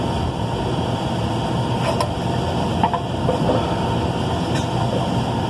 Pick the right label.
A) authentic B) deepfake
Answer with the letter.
A